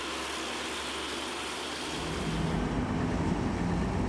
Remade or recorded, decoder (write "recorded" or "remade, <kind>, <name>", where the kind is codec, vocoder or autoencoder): recorded